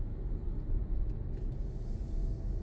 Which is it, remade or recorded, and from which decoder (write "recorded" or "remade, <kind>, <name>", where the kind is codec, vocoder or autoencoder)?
recorded